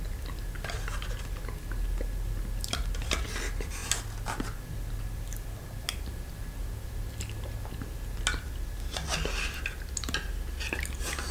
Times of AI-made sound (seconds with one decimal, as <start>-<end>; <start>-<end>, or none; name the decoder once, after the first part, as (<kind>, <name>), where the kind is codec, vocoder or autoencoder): none